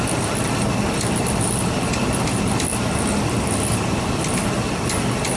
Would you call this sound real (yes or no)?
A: yes